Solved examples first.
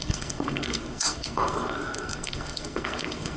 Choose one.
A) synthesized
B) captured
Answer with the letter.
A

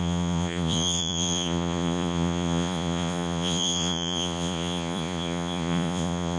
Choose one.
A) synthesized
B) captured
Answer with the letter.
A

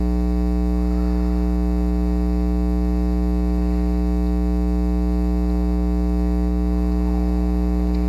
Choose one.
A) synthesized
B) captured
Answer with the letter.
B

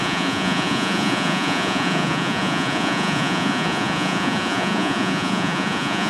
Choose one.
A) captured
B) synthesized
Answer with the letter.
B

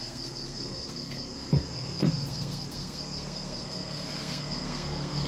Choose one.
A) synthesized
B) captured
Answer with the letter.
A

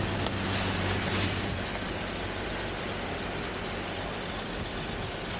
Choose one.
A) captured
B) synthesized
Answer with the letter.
A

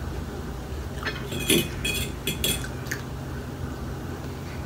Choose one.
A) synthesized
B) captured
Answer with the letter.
B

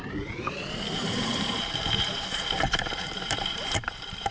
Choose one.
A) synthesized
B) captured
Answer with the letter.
A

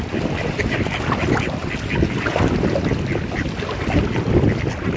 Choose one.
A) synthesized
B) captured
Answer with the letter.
B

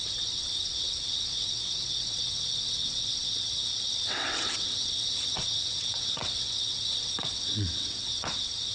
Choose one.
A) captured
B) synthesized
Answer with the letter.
B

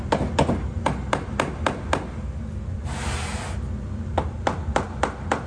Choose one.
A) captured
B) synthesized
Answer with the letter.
A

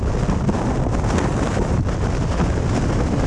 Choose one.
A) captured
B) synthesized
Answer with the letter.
A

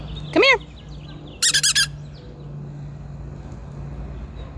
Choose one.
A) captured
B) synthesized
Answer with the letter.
A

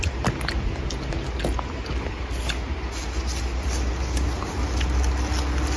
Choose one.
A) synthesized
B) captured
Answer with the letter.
B